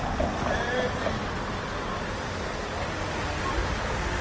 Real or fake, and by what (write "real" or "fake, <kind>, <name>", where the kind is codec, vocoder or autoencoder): real